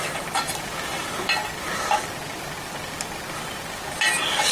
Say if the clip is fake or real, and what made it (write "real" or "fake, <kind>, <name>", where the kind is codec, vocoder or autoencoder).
real